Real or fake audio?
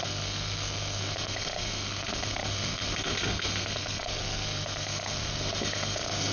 fake